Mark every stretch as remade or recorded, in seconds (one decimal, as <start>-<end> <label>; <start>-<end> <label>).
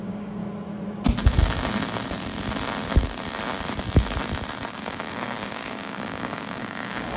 0.0-0.4 remade; 0.4-4.7 recorded; 4.7-7.2 remade